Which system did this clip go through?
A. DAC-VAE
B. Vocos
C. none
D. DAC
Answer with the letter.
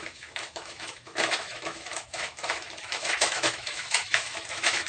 A